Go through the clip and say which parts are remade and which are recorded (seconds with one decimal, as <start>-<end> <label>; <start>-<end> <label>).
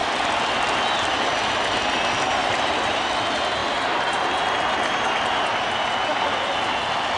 0.0-2.4 recorded; 2.4-3.0 remade; 3.0-7.2 recorded